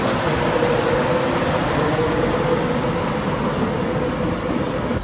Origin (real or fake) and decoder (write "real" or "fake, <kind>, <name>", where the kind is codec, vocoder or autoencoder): real